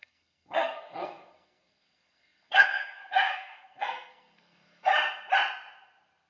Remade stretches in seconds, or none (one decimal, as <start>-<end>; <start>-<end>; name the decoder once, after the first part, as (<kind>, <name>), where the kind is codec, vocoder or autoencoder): 0.0-4.9 (codec, SNAC)